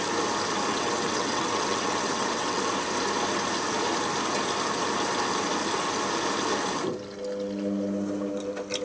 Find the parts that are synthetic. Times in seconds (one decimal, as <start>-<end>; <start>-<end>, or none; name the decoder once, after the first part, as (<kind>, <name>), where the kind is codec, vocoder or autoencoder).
0.7-2.6 (vocoder, WaveNeXt)